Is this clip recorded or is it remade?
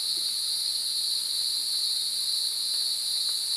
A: recorded